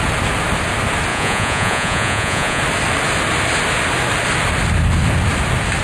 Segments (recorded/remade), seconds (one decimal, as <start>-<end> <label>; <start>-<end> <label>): 0.0-1.1 recorded; 1.1-2.6 remade; 2.6-5.8 recorded